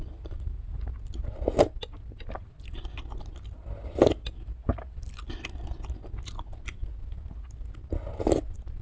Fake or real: real